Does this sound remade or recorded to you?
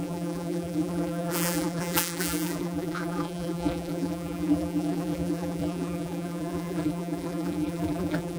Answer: remade